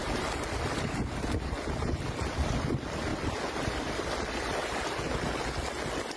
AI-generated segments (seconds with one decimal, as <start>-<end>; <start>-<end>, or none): none

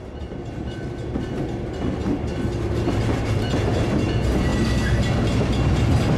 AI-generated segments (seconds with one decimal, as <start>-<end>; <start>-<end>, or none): 0.0-4.5; 5.1-6.2

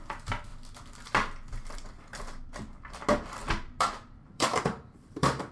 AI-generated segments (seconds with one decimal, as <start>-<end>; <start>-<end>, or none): 0.0-0.5; 3.8-5.5

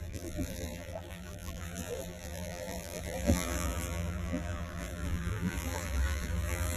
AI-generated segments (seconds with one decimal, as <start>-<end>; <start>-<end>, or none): 0.0-6.8

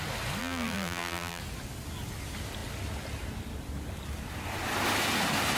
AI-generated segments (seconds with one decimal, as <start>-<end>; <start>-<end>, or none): 0.4-1.4

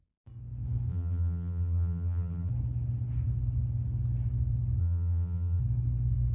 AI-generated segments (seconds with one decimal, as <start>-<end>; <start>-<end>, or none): 0.9-2.5; 4.8-5.6

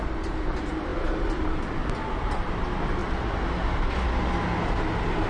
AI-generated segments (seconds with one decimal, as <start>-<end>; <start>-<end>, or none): 3.0-4.1

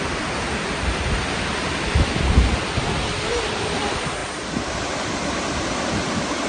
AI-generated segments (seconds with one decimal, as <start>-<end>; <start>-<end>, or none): 0.0-6.5